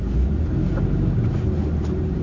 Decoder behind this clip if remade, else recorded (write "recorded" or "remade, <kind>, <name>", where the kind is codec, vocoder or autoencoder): recorded